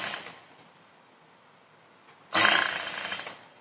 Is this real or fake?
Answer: real